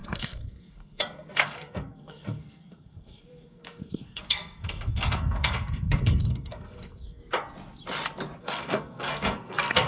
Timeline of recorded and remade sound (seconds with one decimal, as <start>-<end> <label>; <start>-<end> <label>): 0.0-7.2 remade; 7.2-8.4 recorded; 8.4-9.9 remade